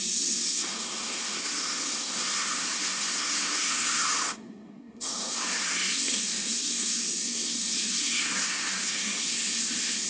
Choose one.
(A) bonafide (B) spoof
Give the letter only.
B